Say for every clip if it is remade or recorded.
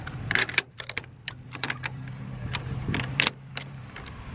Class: remade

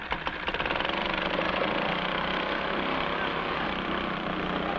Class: recorded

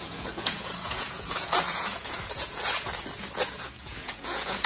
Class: remade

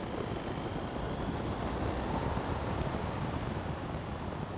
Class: recorded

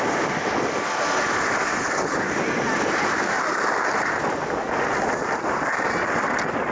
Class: recorded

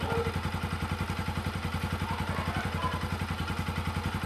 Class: recorded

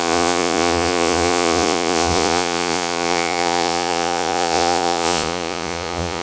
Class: remade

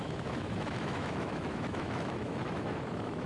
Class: remade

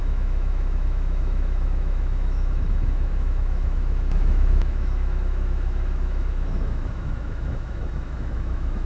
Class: remade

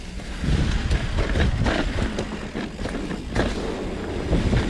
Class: recorded